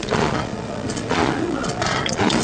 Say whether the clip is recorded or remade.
remade